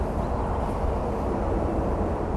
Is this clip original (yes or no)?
yes